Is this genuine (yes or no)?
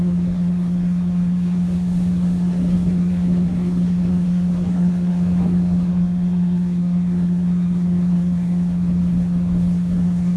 no